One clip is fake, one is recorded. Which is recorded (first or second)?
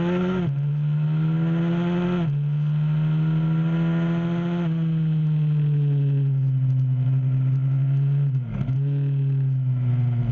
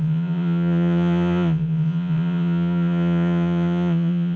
first